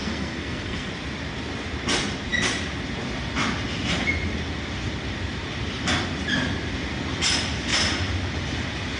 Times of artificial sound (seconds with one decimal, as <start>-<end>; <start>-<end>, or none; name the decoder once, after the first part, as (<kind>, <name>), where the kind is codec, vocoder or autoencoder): 0.0-0.9 (codec, SNAC)